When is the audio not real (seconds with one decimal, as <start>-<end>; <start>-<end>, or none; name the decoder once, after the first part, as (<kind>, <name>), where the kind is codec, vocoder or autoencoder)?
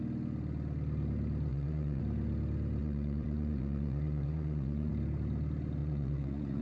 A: 1.5-2.0 (vocoder, Vocos); 2.8-4.9; 5.8-6.6